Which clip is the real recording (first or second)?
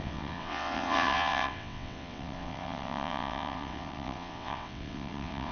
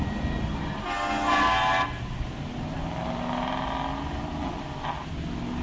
second